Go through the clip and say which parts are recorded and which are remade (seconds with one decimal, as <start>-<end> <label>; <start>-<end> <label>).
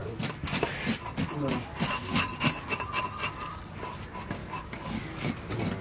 0.0-4.4 recorded; 4.4-5.3 remade; 5.3-5.8 recorded